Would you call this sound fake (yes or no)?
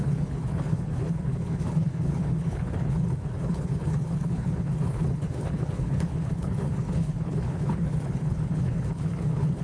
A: yes